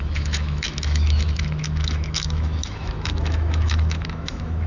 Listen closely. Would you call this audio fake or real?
fake